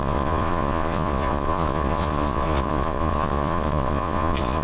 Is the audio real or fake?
fake